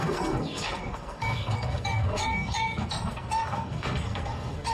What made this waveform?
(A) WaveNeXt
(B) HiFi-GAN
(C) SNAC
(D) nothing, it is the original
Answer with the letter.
C